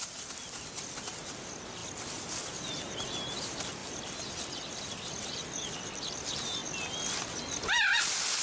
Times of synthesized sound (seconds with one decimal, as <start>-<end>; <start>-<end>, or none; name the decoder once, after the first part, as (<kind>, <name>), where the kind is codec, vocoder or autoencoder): 3.8-5.8 (vocoder, BigVGAN v2)